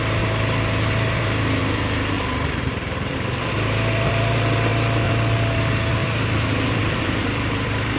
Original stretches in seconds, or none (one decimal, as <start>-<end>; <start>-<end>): 4.7-5.9